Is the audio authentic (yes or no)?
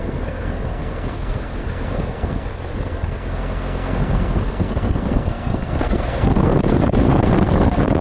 no